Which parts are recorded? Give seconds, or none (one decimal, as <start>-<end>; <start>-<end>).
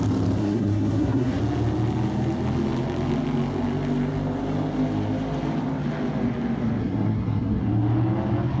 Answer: 0.0-0.4; 1.4-6.8; 7.6-8.6